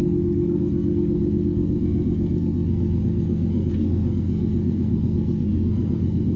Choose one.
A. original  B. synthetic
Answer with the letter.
B